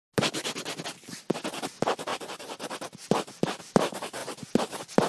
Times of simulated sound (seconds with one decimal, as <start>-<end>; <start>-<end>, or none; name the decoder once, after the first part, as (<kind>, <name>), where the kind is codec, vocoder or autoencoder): 2.1-3.6 (vocoder, BigVGAN v2)